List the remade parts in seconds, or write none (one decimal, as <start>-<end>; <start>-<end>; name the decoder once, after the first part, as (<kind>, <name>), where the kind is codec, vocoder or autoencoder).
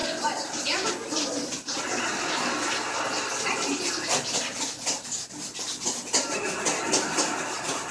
none